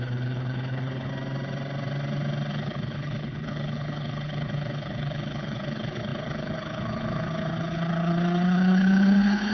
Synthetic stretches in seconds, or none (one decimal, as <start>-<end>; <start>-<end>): 0.0-1.1; 2.5-9.5